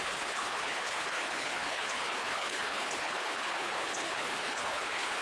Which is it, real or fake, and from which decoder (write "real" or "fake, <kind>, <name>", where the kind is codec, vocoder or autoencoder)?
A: fake, codec, HILCodec